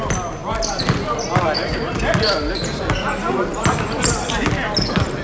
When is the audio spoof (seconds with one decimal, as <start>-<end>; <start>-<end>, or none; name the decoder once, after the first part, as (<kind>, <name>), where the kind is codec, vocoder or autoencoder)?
3.5-4.3 (vocoder, BigVGAN v2)